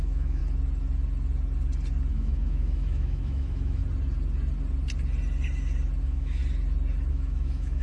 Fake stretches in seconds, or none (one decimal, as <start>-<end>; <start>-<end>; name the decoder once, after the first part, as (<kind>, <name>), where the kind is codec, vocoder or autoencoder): 0.0-0.4 (autoencoder, DAC-VAE); 2.1-3.8; 6.0-6.4; 7.1-7.8